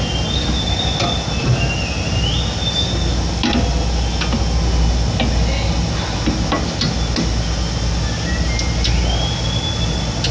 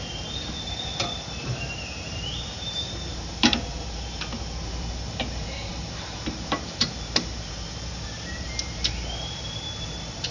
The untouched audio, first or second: first